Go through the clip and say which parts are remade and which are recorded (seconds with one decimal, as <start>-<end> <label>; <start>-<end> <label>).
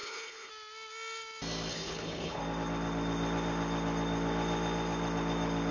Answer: 0.0-0.5 remade; 0.5-1.7 recorded; 1.7-2.4 remade; 2.4-5.7 recorded